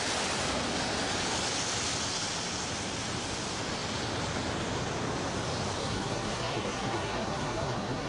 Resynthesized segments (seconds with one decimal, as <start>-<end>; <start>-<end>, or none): 5.8-8.1